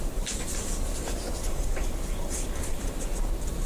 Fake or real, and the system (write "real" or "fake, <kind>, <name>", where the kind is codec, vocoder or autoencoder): real